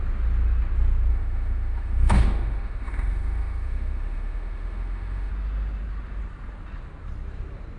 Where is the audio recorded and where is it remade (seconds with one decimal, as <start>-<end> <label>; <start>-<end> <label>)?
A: 0.0-1.1 recorded; 1.1-5.3 remade; 5.3-7.8 recorded